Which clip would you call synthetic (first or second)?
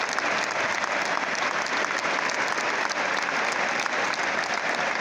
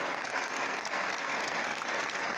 second